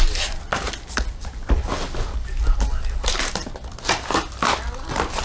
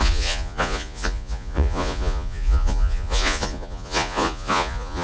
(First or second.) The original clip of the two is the first